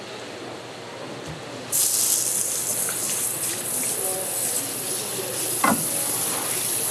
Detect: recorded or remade recorded